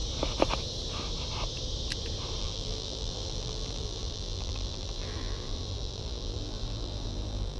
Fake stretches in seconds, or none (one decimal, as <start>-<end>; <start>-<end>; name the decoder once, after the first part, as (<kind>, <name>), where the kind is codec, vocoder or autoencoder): 2.4-7.6 (vocoder, BigVGAN v2)